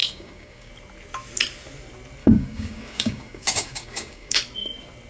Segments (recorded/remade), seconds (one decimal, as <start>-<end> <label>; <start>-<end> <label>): 0.0-0.7 remade; 0.7-2.2 recorded; 2.2-4.4 remade; 4.4-5.1 recorded